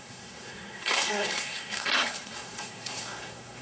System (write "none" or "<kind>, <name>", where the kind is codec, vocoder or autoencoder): codec, SNAC